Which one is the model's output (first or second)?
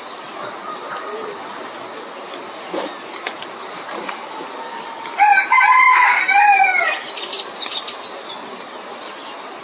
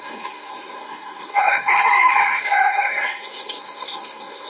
second